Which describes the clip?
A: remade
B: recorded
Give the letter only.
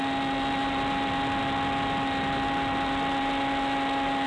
B